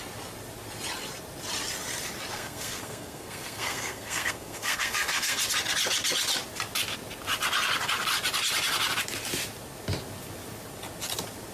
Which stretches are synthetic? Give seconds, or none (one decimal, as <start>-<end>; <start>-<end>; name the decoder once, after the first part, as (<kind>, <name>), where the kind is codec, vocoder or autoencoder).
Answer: 2.3-5.4 (codec, SNAC)

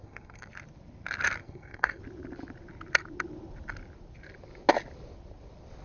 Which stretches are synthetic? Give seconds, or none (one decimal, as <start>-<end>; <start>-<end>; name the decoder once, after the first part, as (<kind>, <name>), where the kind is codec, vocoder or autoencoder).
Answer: 0.0-0.5 (codec, SNAC); 1.4-2.0

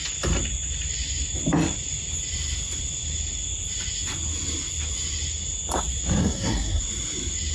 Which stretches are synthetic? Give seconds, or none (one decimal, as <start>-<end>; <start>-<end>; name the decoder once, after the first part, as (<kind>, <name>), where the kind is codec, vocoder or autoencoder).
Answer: 6.2-6.8 (codec, SNAC)